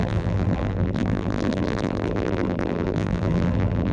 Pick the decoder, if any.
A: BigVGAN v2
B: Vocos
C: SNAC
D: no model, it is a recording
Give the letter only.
A